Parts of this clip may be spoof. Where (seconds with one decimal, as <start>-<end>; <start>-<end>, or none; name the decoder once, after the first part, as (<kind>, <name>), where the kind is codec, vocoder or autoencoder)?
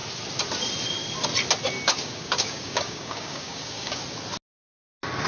1.9-4.0 (codec, DAC)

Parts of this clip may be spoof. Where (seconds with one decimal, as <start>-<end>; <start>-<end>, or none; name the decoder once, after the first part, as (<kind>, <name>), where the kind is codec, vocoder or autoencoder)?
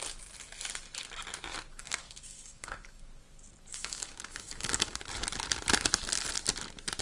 1.7-3.0 (codec, DAC); 3.7-5.0